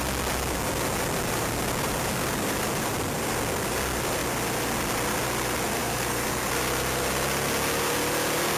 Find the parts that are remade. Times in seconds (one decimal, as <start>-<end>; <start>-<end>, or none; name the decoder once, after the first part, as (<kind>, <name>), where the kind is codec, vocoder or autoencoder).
5.8-6.5 (codec, DAC)